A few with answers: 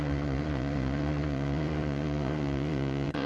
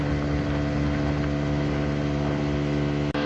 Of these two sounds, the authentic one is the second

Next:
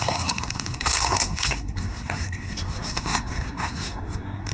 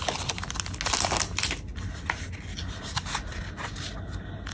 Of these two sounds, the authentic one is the second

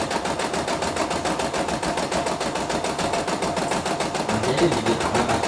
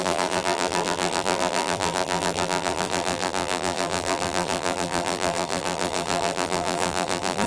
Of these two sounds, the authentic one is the first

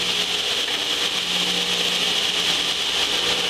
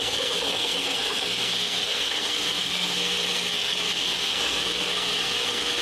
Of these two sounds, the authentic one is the first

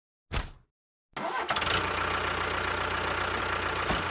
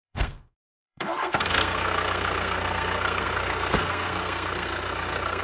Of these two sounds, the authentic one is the first